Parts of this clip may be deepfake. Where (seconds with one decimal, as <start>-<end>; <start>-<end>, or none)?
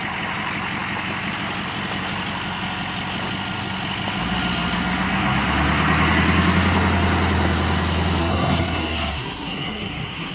8.2-10.3